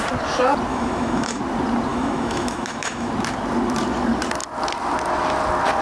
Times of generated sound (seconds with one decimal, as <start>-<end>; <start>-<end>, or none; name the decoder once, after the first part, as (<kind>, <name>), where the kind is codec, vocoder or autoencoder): 0.7-1.4 (autoencoder, DAC-VAE); 1.9-3.1